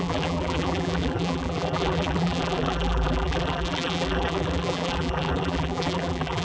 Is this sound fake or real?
fake